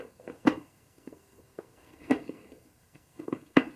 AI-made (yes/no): yes